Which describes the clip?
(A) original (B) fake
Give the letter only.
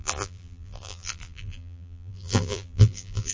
B